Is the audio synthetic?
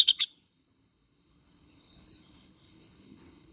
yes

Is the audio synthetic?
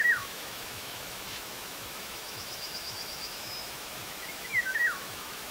yes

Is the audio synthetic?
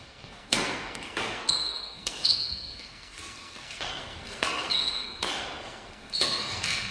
yes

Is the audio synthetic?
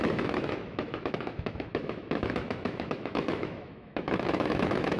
yes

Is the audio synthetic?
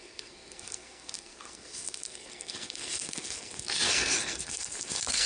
yes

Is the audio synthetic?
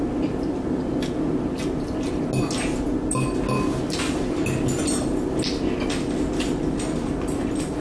no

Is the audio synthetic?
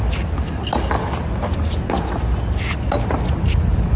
no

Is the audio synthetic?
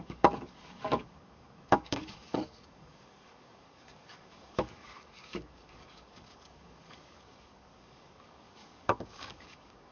yes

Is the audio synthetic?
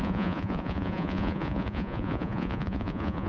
yes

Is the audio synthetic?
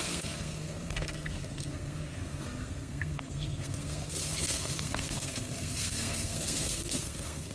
yes